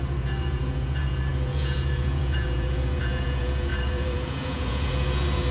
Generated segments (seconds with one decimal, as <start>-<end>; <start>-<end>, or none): 0.0-5.5